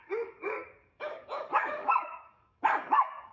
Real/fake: fake